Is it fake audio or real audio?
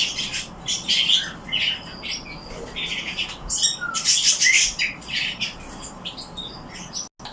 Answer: real